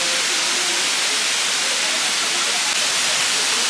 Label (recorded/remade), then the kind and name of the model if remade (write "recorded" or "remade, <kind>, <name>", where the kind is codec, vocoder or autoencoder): recorded